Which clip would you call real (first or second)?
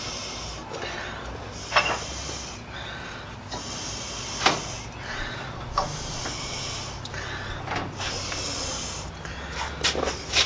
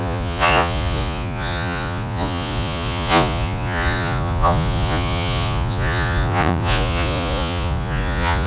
first